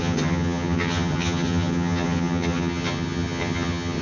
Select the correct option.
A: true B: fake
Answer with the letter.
B